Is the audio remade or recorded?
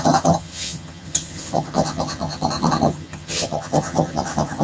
remade